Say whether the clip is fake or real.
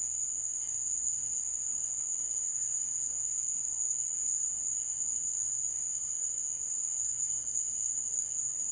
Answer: fake